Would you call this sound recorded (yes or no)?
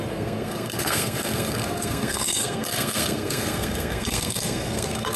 no